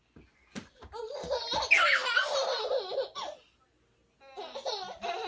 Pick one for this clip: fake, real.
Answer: real